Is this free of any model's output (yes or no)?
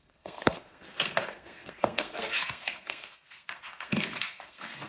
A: no